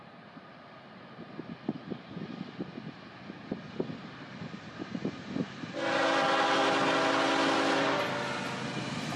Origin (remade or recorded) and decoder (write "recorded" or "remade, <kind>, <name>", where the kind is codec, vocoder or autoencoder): recorded